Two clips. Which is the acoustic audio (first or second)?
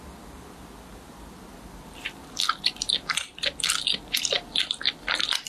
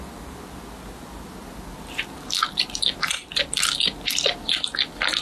second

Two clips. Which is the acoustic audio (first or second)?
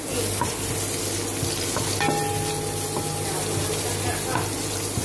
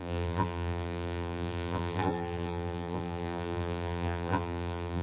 first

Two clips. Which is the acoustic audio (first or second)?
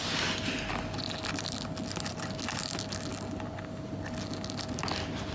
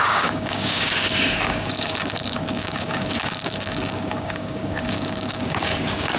first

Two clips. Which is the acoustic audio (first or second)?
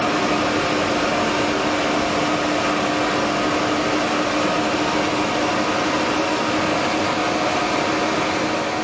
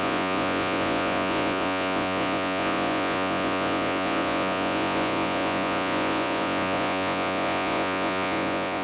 first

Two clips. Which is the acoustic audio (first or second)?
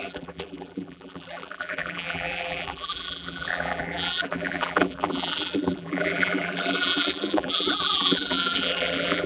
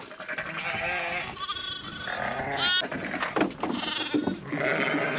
second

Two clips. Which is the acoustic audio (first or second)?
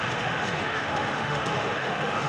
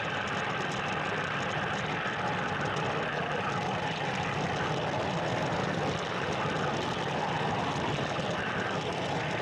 second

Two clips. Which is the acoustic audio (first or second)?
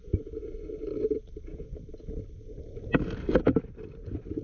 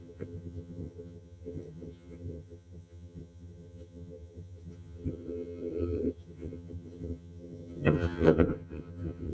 first